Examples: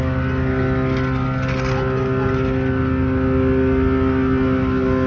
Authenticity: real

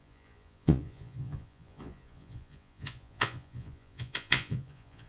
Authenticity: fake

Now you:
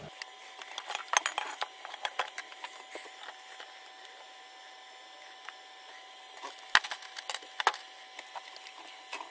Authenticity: real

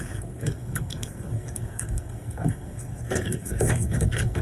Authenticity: fake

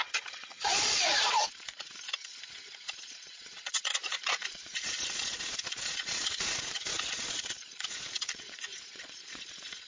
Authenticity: fake